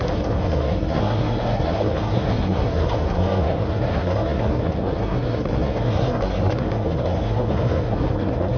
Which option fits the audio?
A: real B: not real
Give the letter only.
B